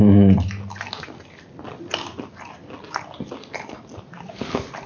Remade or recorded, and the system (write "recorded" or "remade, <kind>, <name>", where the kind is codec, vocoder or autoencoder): recorded